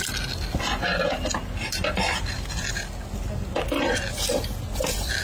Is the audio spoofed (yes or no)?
no